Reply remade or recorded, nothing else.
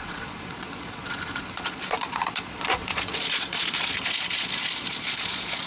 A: remade